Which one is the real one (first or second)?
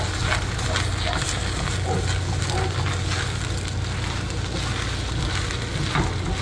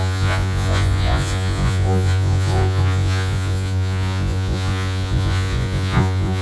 first